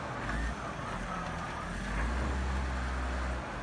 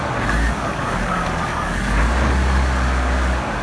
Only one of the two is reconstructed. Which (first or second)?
second